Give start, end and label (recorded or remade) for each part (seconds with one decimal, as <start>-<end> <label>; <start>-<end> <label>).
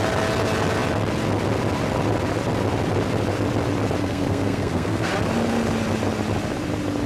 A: 0.0-4.0 recorded; 4.0-5.1 remade; 5.1-7.1 recorded